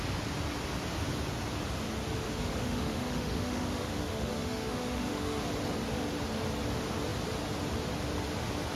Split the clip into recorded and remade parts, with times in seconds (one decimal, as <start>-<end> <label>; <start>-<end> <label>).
0.0-2.2 recorded; 2.2-5.4 remade; 5.4-8.8 recorded